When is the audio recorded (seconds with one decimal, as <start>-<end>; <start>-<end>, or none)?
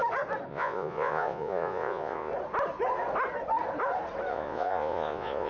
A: 0.0-0.5; 2.3-4.3